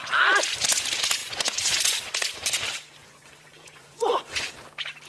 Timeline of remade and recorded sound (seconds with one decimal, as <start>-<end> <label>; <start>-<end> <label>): 0.0-1.2 recorded; 1.2-1.8 remade; 1.8-3.0 recorded; 3.0-4.5 remade; 4.5-5.1 recorded